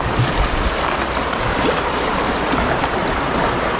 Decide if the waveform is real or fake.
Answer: real